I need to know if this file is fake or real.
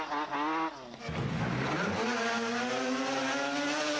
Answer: real